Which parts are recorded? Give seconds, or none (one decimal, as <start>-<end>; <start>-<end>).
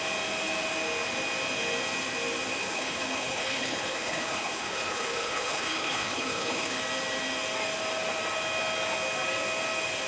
0.0-2.6; 6.8-10.1